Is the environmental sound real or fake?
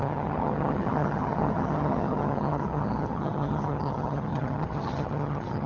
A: fake